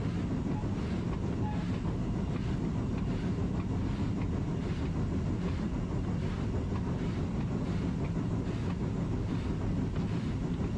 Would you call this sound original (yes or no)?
yes